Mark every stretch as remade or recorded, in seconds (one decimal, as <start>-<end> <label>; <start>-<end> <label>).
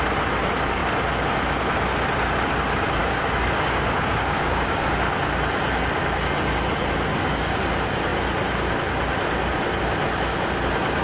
0.0-3.0 recorded; 3.0-4.9 remade; 4.9-7.1 recorded; 7.1-7.6 remade; 7.6-11.0 recorded